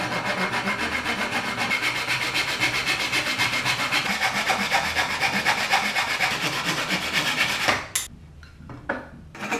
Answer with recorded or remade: recorded